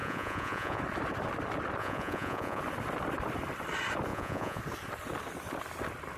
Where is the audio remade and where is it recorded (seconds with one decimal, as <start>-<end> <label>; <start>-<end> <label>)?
0.0-0.8 remade; 0.8-1.8 recorded; 1.8-2.6 remade; 2.6-4.1 recorded; 4.1-4.6 remade; 4.6-6.2 recorded